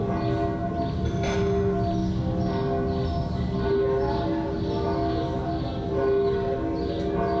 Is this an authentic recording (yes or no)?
yes